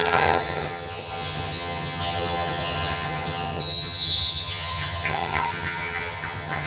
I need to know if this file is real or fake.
fake